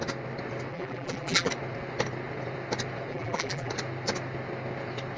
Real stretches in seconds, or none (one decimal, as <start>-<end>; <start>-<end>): 0.0-0.7; 1.5-3.1; 3.7-5.2